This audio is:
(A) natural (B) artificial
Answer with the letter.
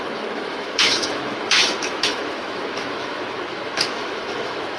B